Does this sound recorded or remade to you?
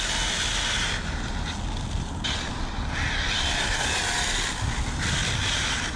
recorded